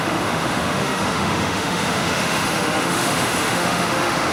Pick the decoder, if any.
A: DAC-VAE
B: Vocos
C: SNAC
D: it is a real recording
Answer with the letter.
A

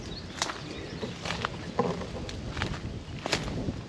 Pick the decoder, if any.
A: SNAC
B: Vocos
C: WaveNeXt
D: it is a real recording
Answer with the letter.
D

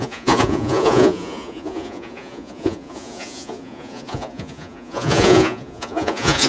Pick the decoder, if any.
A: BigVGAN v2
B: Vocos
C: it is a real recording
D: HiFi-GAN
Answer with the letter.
B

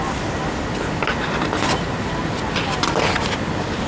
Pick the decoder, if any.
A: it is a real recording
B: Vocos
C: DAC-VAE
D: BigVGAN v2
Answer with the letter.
A